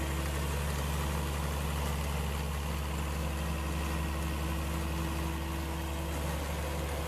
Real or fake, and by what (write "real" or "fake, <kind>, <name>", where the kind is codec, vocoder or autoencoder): real